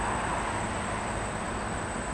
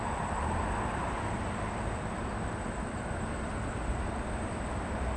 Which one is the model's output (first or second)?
second